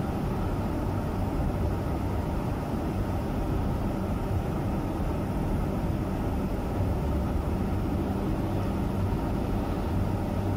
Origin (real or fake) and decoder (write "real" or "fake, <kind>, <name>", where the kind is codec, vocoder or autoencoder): real